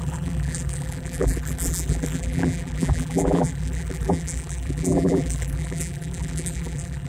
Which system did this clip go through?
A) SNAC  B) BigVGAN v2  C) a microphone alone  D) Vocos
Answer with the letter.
B